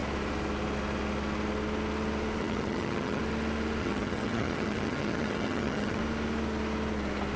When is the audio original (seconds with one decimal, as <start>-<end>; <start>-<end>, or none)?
0.0-2.4; 3.2-3.8; 6.0-7.4